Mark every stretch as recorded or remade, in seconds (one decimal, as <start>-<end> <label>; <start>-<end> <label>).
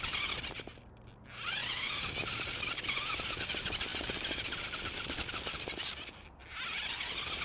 0.0-1.6 recorded; 1.6-2.6 remade; 2.6-3.9 recorded; 3.9-6.0 remade; 6.0-7.4 recorded